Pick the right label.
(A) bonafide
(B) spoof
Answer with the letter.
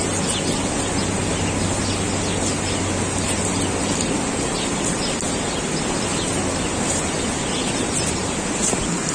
A